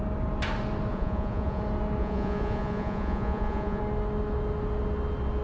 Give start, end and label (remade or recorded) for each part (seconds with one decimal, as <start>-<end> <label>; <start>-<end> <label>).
0.0-0.9 recorded; 0.9-1.6 remade; 1.6-2.0 recorded; 2.0-3.8 remade; 3.8-5.4 recorded